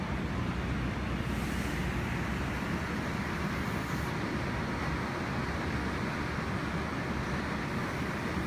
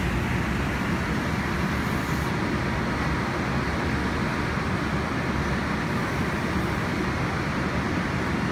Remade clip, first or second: first